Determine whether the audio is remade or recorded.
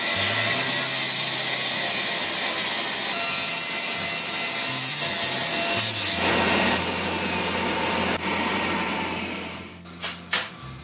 recorded